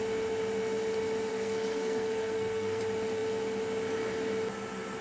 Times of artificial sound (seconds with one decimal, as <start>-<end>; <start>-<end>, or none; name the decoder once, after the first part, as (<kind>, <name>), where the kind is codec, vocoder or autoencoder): 1.3-2.8 (codec, SNAC)